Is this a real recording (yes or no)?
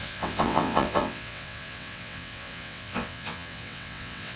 no